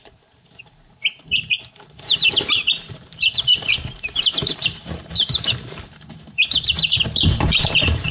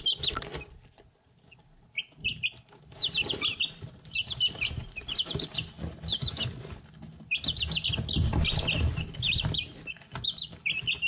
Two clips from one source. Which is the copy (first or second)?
first